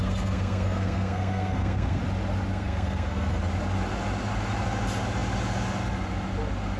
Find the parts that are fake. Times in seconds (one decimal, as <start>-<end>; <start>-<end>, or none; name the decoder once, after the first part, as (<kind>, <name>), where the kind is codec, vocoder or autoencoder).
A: 0.0-2.0 (codec, SNAC); 2.5-3.4